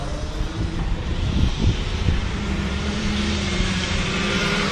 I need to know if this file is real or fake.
fake